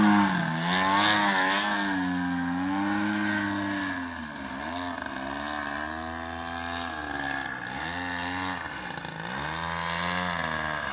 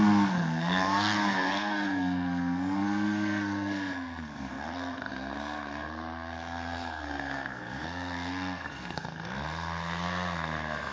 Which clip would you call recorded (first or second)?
first